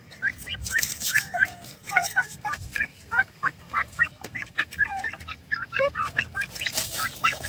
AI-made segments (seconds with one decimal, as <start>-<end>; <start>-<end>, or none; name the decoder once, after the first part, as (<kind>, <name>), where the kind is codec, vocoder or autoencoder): 0.0-7.5 (codec, SNAC)